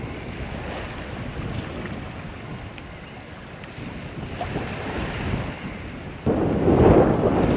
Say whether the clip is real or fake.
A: real